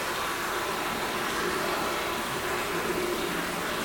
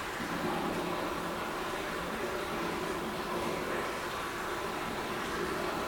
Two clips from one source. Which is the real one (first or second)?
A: second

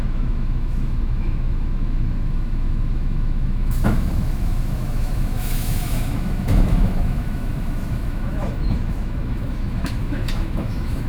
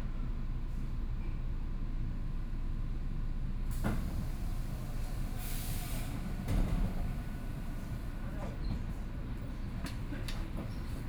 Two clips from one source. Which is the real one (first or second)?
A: second